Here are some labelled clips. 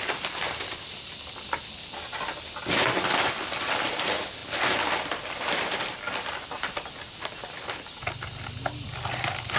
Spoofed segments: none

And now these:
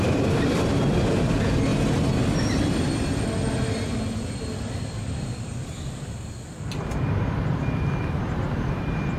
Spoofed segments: 0.0-1.7 (vocoder, BigVGAN v2); 4.3-9.2

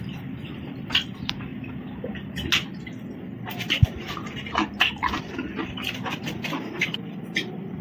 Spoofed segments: 0.0-1.5 (vocoder, BigVGAN v2); 6.2-7.8